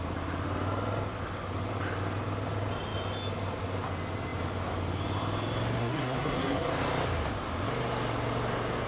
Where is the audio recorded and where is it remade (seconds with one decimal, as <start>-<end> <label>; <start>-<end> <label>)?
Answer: 0.0-5.8 recorded; 5.8-6.7 remade; 6.7-8.9 recorded